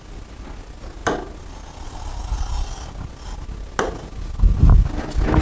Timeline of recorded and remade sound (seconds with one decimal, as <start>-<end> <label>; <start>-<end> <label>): 0.0-5.4 recorded